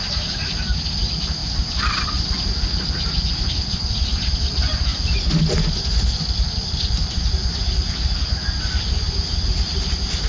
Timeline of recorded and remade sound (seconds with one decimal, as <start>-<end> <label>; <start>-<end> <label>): 0.0-10.3 recorded